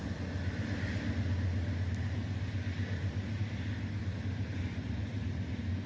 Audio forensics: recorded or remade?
recorded